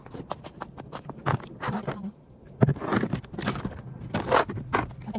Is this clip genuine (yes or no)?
no